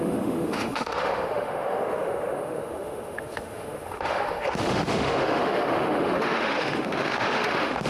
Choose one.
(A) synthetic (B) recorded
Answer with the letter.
A